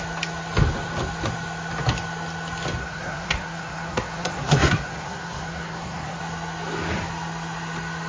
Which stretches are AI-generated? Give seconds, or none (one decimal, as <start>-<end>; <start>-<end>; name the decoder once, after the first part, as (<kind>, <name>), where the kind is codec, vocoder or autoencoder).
2.8-6.2 (codec, SNAC)